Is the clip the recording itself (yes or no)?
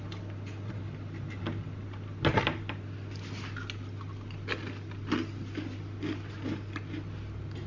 yes